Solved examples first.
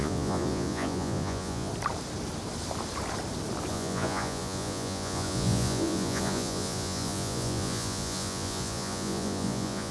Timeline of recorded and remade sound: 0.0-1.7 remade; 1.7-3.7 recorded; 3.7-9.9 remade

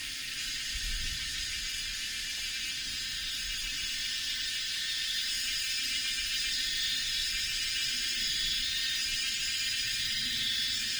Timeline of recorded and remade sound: 0.0-3.8 recorded; 3.8-6.3 remade; 6.3-7.0 recorded; 7.0-7.8 remade; 7.8-9.8 recorded; 9.8-11.0 remade

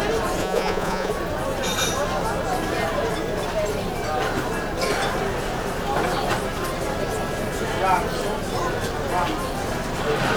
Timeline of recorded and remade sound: 0.0-0.4 recorded; 0.4-1.1 remade; 1.1-10.4 recorded

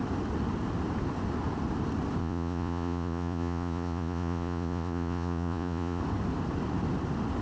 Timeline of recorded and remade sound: 0.0-2.2 recorded; 2.2-6.0 remade; 6.0-7.4 recorded

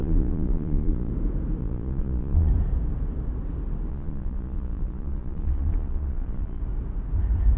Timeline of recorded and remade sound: 0.0-1.1 remade; 1.1-1.6 recorded; 1.6-2.5 remade; 2.5-3.9 recorded; 3.9-6.6 remade; 6.6-7.6 recorded